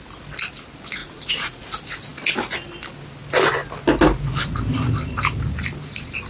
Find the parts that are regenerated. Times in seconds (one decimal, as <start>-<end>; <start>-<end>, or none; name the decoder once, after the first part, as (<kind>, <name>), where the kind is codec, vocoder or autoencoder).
1.0-1.6 (vocoder, Vocos)